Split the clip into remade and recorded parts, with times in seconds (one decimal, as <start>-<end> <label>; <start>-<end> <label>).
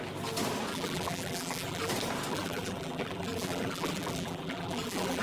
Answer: 0.0-0.7 recorded; 0.7-1.9 remade; 1.9-2.3 recorded; 2.3-5.2 remade